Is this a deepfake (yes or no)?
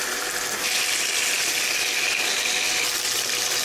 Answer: no